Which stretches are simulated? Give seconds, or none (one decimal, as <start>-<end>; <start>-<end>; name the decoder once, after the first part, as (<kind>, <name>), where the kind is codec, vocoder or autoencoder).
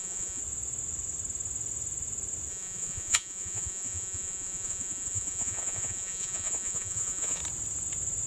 0.0-0.4 (vocoder, Vocos); 2.5-7.4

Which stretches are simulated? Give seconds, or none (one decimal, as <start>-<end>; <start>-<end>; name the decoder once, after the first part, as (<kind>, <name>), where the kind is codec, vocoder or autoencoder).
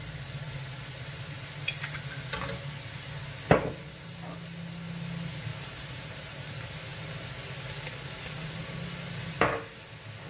5.5-6.5 (vocoder, BigVGAN v2)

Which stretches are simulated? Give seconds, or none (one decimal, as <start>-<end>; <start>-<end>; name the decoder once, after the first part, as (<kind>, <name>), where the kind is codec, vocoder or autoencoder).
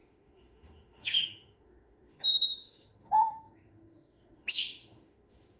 0.0-5.6 (autoencoder, DAC-VAE)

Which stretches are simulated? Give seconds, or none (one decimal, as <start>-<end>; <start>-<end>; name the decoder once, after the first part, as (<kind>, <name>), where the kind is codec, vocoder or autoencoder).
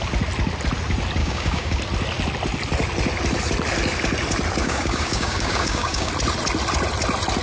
1.2-1.8 (codec, DAC); 4.6-6.1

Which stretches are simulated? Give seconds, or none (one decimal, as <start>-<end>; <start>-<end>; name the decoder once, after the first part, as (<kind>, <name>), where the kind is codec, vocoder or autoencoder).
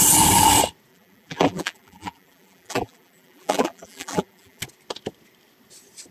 0.9-4.6 (vocoder, BigVGAN v2)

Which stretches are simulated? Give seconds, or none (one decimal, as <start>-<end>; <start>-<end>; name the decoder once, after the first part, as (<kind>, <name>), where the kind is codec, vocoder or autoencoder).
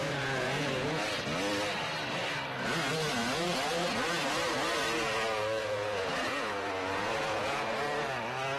0.0-1.1 (vocoder, Vocos); 3.2-4.3; 5.6-7.7